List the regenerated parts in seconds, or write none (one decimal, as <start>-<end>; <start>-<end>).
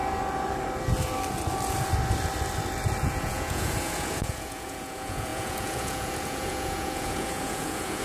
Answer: 3.0-8.0